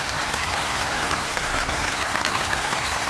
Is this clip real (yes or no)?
no